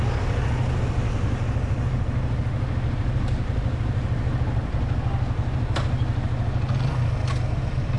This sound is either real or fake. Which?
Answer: real